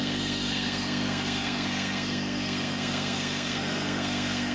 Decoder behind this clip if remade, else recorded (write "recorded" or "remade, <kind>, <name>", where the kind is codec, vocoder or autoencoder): remade, codec, SNAC